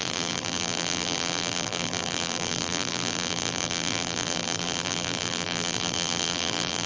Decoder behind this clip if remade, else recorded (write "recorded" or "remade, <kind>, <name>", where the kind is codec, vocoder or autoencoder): remade, vocoder, BigVGAN v2